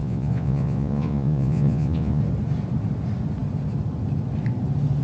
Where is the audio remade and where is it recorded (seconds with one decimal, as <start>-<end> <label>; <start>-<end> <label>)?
0.0-2.2 remade; 2.2-5.0 recorded